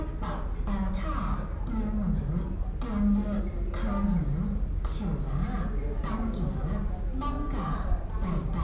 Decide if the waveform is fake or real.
real